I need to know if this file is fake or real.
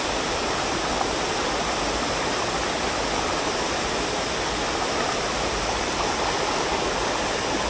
real